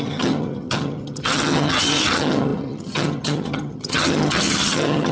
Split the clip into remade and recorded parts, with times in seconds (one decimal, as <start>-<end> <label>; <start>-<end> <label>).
0.0-5.1 remade

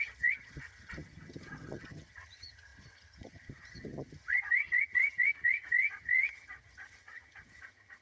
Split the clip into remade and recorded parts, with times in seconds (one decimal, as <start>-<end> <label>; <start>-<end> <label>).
0.0-8.0 remade

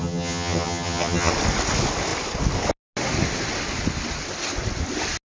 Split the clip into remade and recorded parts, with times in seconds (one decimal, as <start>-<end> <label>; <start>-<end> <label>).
0.0-1.3 remade; 1.3-5.2 recorded

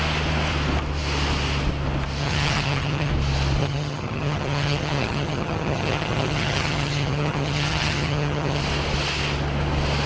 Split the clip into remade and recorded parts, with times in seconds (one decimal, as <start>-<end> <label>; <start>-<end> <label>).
0.0-2.2 recorded; 2.2-3.1 remade; 3.1-3.6 recorded; 3.6-8.6 remade; 8.6-10.1 recorded

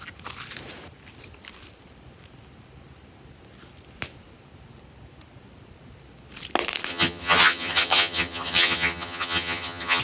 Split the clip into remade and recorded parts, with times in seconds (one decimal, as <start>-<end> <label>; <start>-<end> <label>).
0.0-6.9 recorded; 6.9-10.0 remade

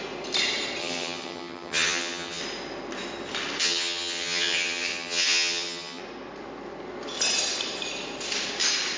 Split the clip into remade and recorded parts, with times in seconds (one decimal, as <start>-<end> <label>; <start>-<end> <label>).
0.0-0.8 recorded; 0.8-2.4 remade; 2.4-3.6 recorded; 3.6-6.0 remade; 6.0-9.0 recorded